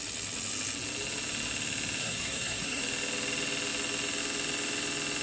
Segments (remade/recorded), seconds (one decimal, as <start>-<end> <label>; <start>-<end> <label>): 0.0-2.0 recorded; 2.0-2.8 remade; 2.8-5.2 recorded